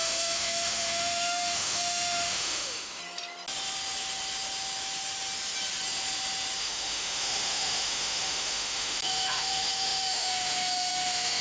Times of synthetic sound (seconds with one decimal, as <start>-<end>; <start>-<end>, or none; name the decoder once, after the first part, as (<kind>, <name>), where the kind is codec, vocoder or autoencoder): 0.0-3.0 (autoencoder, DAC-VAE); 6.6-11.4